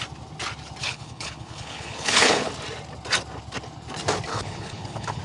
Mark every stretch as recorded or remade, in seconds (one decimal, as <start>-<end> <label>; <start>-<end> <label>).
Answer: 0.0-0.8 recorded; 0.8-2.5 remade; 2.5-4.3 recorded; 4.3-5.2 remade